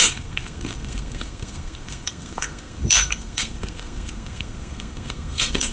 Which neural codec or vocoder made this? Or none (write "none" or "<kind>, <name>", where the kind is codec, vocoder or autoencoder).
codec, SNAC